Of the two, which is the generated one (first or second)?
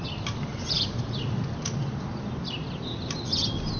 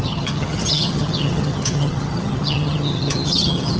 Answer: second